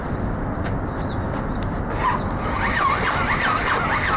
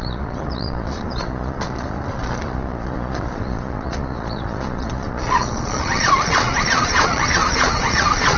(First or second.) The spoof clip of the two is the second